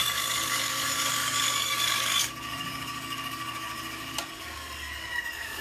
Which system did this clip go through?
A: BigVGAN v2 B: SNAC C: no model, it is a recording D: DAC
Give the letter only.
D